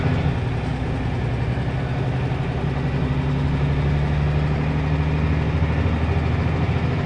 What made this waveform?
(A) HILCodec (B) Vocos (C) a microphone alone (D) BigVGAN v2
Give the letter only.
C